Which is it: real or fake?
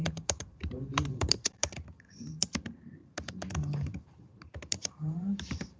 fake